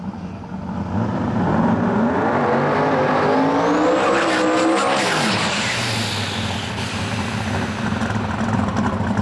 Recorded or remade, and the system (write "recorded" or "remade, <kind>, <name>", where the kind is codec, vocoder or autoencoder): recorded